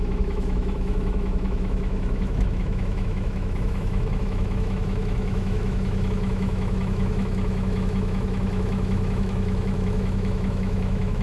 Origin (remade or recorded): remade